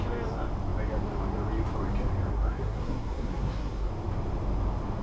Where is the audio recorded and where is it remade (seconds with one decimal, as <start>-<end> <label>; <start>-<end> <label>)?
0.0-2.3 recorded; 2.3-3.9 remade; 3.9-5.0 recorded